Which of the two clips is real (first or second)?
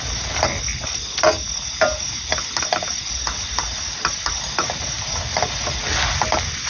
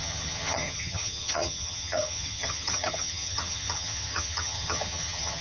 first